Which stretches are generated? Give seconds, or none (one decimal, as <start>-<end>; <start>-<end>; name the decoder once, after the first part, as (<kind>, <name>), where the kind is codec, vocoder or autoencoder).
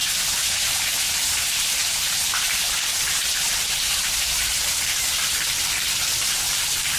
0.0-2.2 (vocoder, BigVGAN v2); 2.9-4.6